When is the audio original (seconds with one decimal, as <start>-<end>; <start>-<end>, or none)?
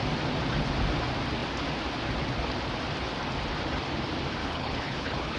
0.0-4.4